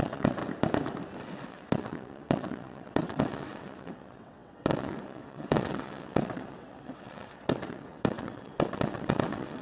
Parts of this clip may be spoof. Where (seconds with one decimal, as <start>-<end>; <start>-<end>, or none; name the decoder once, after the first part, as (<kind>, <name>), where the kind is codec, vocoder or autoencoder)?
0.0-0.4 (vocoder, WaveNeXt); 1.5-9.6